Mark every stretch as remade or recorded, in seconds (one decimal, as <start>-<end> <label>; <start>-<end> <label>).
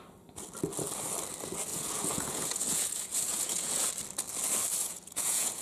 0.0-1.7 recorded; 1.7-3.9 remade; 3.9-4.8 recorded; 4.8-5.6 remade